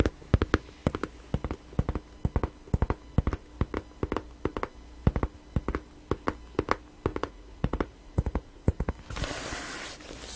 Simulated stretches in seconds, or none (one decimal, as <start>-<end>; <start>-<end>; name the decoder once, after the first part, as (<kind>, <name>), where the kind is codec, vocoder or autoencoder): 7.1-8.9 (vocoder, Vocos)